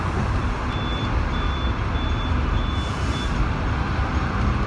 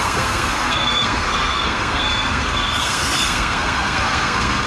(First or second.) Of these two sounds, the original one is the first